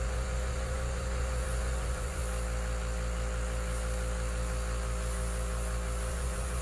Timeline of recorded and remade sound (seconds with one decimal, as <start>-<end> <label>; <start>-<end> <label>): 0.0-2.2 remade; 2.2-6.1 recorded; 6.1-6.6 remade